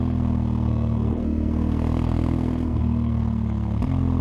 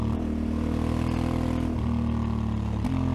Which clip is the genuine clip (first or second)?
second